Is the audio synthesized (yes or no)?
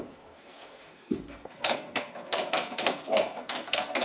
yes